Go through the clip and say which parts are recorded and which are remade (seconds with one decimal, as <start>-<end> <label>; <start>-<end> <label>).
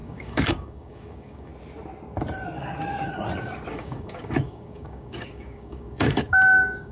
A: 0.0-1.5 remade; 1.5-3.7 recorded; 3.7-6.9 remade